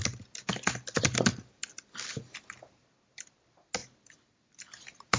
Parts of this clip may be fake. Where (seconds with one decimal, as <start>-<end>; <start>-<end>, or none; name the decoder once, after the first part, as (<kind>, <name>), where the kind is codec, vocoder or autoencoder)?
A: none